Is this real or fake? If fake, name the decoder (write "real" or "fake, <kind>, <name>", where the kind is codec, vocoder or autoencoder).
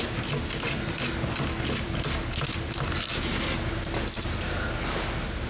real